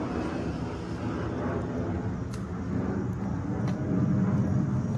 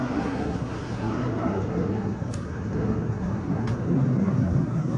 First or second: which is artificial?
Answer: second